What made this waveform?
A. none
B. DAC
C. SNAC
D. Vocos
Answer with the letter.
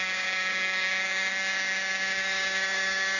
B